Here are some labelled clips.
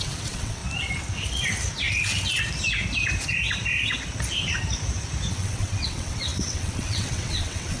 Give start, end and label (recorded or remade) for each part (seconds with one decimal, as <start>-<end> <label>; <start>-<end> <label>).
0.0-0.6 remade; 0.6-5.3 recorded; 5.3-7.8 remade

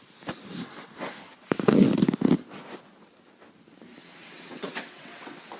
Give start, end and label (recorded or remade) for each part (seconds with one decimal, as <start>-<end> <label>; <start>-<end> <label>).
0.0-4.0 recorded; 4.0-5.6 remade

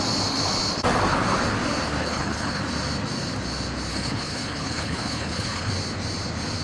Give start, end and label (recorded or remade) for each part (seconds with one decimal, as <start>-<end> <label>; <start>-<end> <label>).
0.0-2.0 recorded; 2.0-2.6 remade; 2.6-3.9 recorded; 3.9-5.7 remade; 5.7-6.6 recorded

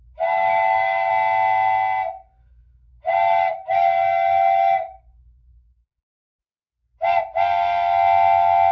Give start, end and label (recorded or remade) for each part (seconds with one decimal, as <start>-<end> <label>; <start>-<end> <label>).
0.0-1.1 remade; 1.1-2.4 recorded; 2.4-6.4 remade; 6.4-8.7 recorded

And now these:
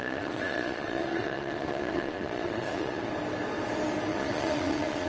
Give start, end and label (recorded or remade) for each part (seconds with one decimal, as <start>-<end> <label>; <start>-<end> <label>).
0.0-3.1 remade; 3.1-4.1 recorded; 4.1-5.1 remade

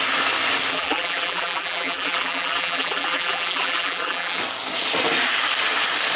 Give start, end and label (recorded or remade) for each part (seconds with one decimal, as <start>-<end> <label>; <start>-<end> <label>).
0.0-0.7 recorded; 0.7-4.4 remade; 4.4-6.2 recorded

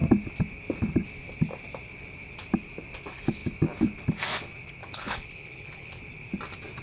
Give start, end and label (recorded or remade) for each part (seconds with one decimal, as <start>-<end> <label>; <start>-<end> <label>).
0.0-4.8 recorded; 4.8-6.0 remade; 6.0-6.8 recorded